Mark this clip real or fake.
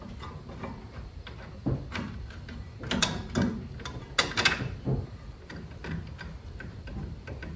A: real